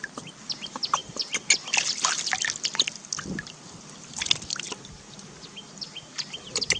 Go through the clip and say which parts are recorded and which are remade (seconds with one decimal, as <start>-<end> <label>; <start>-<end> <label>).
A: 0.0-6.8 recorded